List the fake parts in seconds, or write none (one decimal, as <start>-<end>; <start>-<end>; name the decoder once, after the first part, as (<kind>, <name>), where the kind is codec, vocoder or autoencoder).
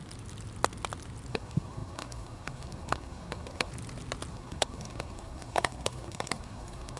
1.3-3.7 (codec, SNAC); 4.3-7.0